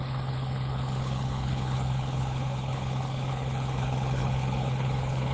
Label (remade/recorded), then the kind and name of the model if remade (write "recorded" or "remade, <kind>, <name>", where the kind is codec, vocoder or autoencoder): remade, codec, HILCodec